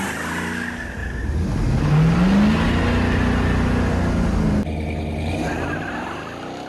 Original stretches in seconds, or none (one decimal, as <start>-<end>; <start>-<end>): 0.0-6.7